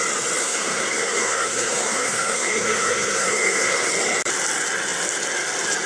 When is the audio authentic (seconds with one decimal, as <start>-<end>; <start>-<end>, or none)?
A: 0.0-0.4; 3.9-5.9